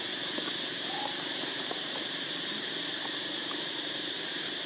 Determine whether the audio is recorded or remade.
remade